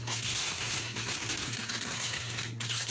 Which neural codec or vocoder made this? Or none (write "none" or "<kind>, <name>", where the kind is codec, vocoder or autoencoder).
codec, SNAC